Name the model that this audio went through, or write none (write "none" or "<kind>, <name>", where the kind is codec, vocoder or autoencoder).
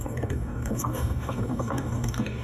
codec, DAC